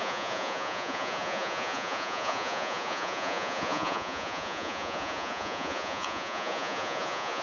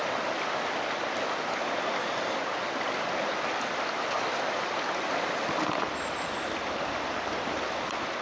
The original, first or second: second